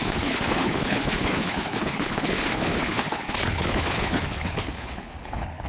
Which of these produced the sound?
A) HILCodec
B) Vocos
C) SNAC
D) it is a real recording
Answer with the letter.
A